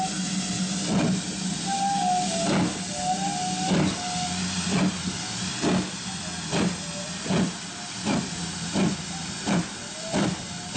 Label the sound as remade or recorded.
recorded